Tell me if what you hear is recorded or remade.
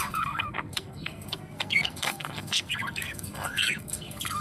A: remade